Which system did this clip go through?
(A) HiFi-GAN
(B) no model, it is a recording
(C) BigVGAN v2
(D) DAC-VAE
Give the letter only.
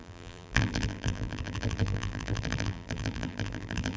C